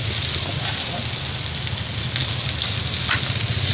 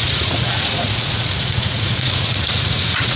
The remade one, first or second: second